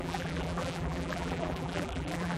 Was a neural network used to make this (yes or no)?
yes